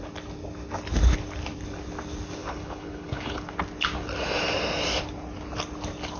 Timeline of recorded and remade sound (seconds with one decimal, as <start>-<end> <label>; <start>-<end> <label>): 0.0-2.4 recorded; 2.4-3.5 remade; 3.5-6.2 recorded